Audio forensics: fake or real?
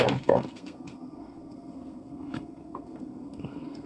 fake